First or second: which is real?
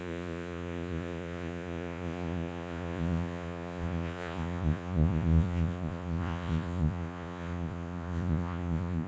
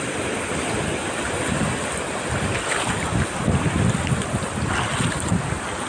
second